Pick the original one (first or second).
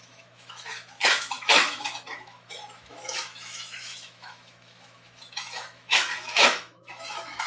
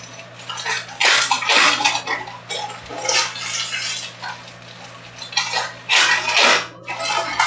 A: second